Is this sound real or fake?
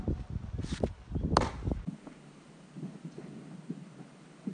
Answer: real